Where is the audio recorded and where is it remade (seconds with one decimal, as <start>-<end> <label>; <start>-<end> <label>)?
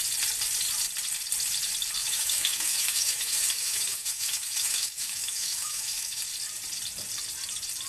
0.0-2.0 recorded; 2.0-6.2 remade; 6.2-7.9 recorded